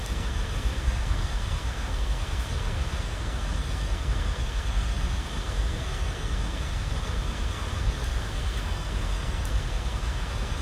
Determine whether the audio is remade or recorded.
remade